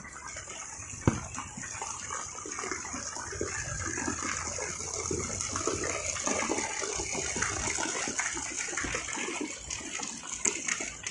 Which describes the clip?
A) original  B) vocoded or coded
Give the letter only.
A